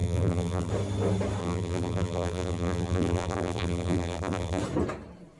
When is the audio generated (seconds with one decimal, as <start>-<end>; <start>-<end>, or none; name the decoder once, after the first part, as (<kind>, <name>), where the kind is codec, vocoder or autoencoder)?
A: 0.0-0.7 (vocoder, BigVGAN v2); 1.4-4.6